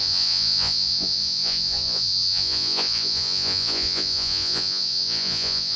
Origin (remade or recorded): remade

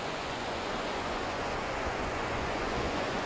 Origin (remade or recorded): remade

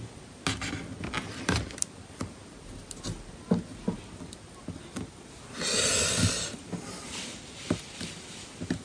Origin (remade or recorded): recorded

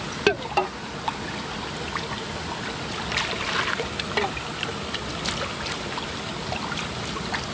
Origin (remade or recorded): recorded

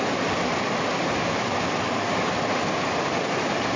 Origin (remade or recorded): recorded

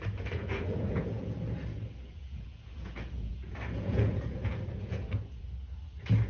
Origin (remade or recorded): remade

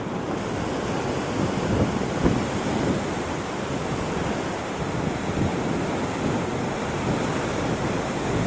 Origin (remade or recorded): recorded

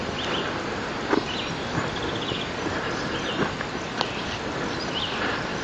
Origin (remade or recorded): recorded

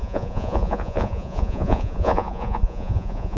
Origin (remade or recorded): remade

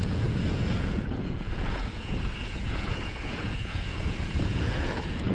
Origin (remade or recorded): remade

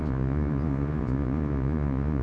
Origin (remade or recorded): remade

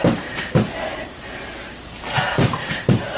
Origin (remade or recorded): recorded